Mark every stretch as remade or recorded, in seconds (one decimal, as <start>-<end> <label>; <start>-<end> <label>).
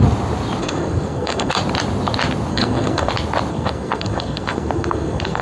0.0-0.6 recorded; 0.6-1.5 remade; 1.5-2.5 recorded; 2.5-3.1 remade; 3.1-3.5 recorded; 3.5-5.4 remade